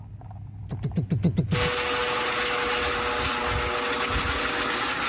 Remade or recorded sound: recorded